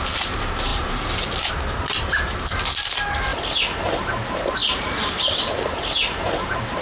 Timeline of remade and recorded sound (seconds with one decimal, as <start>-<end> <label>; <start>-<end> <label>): 0.0-0.7 recorded; 0.7-1.5 remade; 1.5-4.6 recorded; 4.6-5.2 remade; 5.2-6.0 recorded; 6.0-6.8 remade